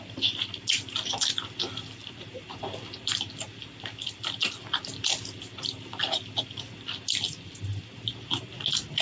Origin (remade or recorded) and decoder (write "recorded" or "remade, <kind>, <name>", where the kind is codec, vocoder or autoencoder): recorded